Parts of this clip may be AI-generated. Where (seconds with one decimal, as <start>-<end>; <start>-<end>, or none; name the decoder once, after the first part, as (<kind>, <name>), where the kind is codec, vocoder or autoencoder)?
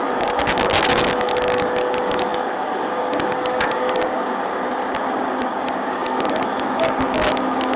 0.0-7.8 (codec, DAC)